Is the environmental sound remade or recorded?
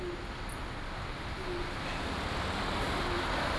recorded